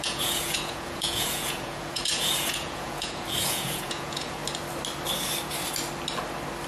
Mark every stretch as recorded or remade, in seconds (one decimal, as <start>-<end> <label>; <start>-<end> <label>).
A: 0.0-4.4 remade; 4.4-6.7 recorded